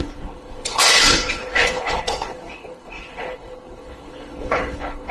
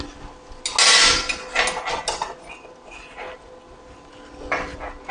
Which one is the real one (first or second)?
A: second